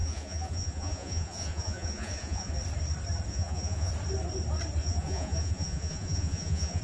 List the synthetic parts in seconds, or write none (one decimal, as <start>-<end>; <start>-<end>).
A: 0.0-2.5; 3.3-3.9; 4.8-6.8